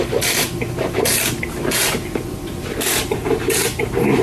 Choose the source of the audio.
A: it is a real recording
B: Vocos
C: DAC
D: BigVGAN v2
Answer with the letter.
D